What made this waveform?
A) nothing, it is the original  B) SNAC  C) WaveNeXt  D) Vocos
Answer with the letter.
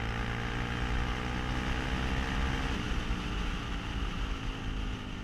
A